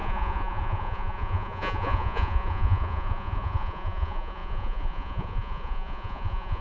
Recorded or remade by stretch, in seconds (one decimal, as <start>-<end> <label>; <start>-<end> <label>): 0.0-6.6 remade